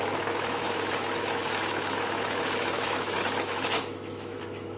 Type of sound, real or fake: fake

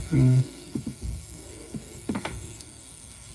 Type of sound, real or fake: fake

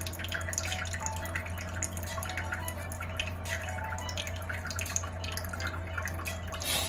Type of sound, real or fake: real